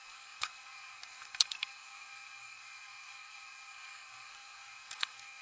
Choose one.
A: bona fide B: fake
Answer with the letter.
B